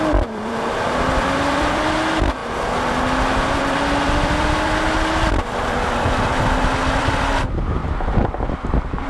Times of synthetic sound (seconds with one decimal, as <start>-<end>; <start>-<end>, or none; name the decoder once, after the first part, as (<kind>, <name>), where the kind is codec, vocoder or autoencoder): 0.0-2.4 (vocoder, BigVGAN v2); 3.5-7.8; 8.5-9.1